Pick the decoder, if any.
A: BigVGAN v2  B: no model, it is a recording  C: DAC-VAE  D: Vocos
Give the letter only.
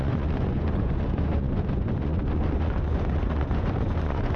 D